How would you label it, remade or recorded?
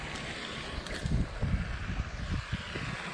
recorded